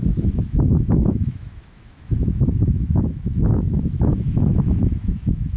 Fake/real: fake